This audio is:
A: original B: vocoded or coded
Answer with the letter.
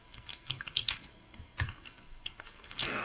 B